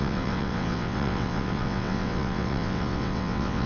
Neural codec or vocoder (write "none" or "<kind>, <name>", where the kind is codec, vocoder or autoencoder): vocoder, WaveNeXt